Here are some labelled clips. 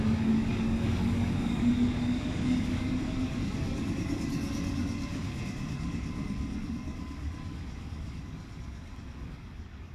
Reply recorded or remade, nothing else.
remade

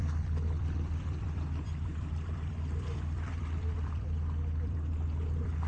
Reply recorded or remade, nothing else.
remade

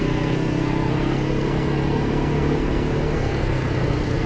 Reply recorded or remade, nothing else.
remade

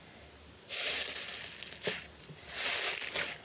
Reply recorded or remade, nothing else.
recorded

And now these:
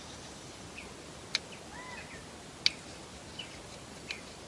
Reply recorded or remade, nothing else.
recorded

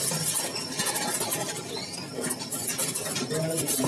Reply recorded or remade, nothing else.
recorded